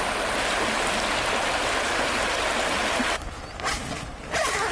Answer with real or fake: real